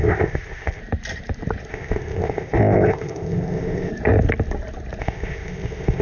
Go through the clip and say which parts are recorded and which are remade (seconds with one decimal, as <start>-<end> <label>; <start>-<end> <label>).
0.0-0.8 remade; 0.8-1.7 recorded; 1.7-3.9 remade; 3.9-5.0 recorded; 5.0-6.0 remade